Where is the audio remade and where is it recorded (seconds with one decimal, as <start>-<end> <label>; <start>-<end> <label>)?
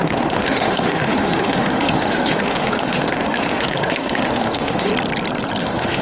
0.0-4.9 remade; 4.9-5.6 recorded; 5.6-6.0 remade